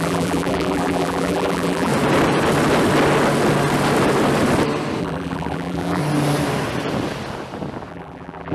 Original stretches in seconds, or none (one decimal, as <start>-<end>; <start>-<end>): 1.9-5.0; 6.0-7.9